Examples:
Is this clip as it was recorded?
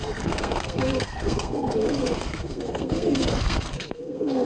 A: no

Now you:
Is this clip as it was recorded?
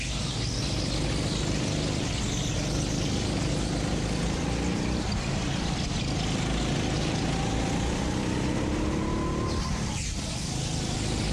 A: yes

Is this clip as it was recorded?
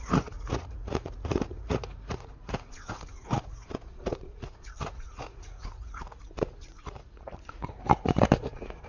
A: no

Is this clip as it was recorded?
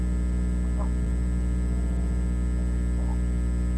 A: yes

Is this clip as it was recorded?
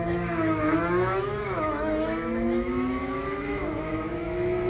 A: no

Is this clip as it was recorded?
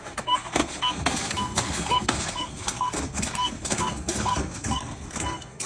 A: no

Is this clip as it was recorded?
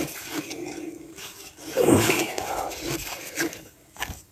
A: no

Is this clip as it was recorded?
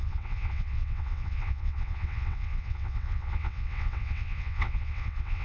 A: no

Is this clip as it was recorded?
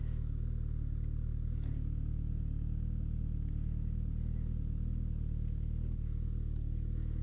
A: yes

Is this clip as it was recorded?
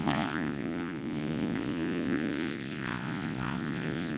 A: no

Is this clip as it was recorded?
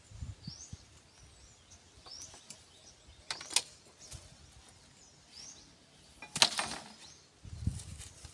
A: yes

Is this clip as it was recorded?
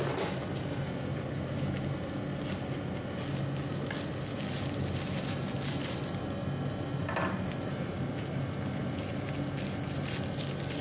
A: yes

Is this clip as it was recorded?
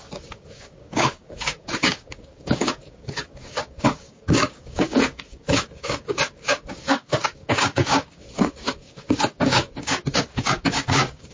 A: no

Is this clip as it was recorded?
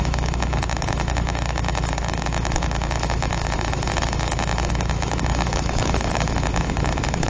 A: no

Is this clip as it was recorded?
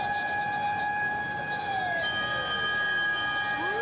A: yes